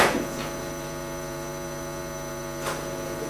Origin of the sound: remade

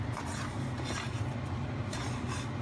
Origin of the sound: recorded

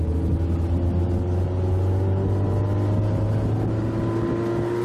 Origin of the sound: recorded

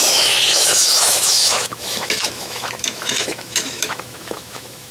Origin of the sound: remade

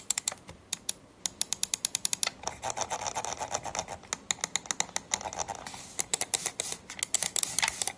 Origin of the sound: recorded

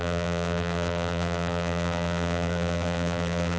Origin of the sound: remade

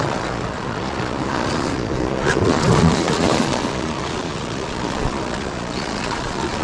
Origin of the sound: remade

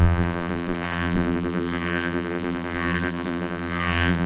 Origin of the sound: remade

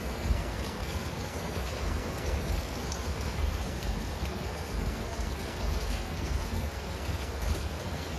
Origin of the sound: remade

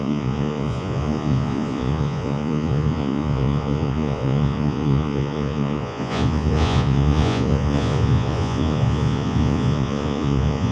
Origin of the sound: remade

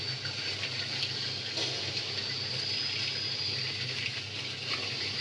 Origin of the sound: recorded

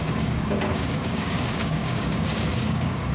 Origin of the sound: remade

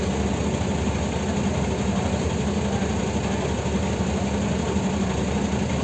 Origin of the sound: recorded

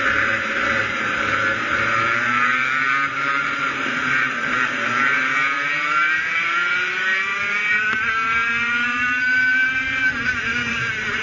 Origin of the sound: remade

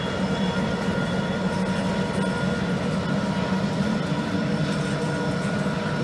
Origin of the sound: recorded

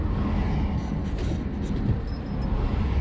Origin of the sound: recorded